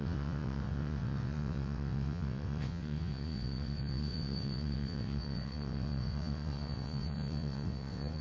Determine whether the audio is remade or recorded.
remade